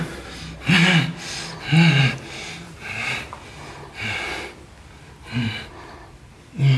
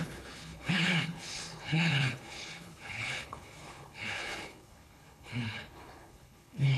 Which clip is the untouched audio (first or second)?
first